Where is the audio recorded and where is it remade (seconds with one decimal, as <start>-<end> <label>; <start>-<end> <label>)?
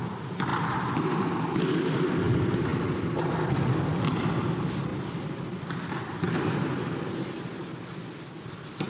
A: 0.0-0.5 recorded; 0.5-2.1 remade; 2.1-4.9 recorded; 4.9-6.4 remade; 6.4-8.9 recorded